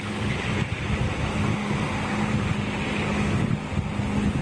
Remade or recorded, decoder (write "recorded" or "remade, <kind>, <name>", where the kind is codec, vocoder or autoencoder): recorded